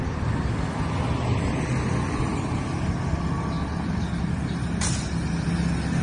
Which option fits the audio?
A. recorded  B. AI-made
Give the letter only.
A